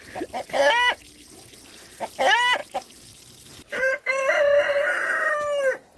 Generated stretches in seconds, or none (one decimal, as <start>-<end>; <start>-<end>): none